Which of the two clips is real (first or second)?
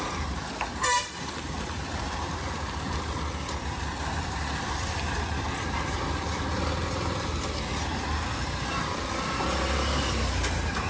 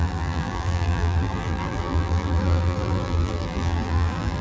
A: first